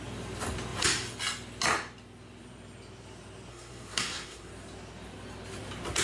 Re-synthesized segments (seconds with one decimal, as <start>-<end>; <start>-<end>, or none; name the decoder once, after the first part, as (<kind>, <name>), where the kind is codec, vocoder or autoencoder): 3.5-4.5 (codec, SNAC)